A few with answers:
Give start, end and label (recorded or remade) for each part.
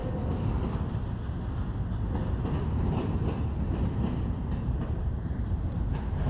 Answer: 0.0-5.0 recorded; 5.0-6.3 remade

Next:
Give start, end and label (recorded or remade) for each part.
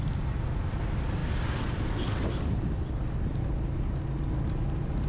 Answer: 0.0-5.1 recorded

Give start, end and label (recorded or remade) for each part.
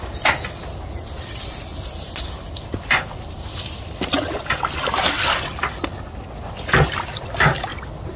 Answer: 0.0-8.2 recorded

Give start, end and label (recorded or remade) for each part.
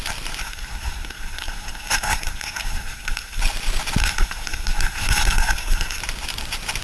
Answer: 0.0-0.4 recorded; 0.4-3.4 remade; 3.4-4.0 recorded; 4.0-6.0 remade; 6.0-6.8 recorded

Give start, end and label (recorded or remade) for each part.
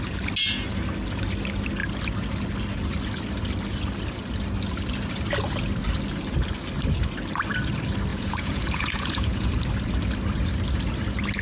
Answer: 0.0-8.1 recorded; 8.1-9.5 remade; 9.5-11.4 recorded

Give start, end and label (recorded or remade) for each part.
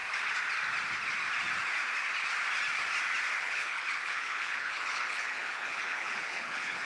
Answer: 0.0-3.4 recorded; 3.4-6.9 remade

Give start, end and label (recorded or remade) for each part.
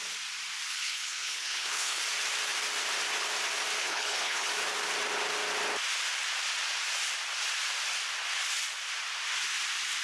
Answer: 0.0-0.7 recorded; 0.7-2.0 remade; 2.0-3.8 recorded; 3.8-4.5 remade; 4.5-10.0 recorded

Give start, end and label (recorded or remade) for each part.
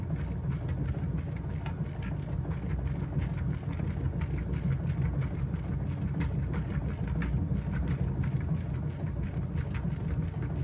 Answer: 0.0-10.6 recorded